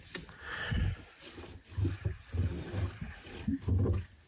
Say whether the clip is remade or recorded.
recorded